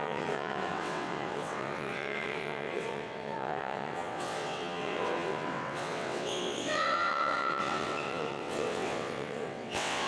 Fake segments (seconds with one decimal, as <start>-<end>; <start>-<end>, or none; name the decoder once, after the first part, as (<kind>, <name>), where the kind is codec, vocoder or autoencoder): 0.0-10.1 (vocoder, WaveNeXt)